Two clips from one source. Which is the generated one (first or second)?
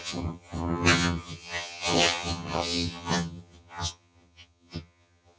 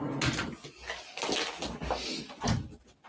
first